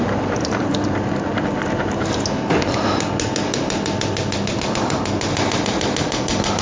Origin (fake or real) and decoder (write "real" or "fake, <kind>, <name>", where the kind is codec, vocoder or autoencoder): real